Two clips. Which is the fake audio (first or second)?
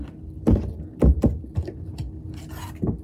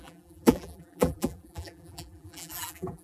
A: second